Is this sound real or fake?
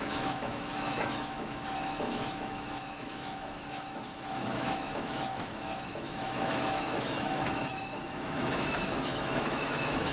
fake